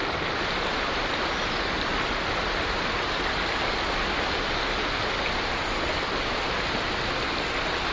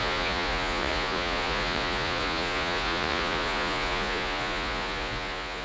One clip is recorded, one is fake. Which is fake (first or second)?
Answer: second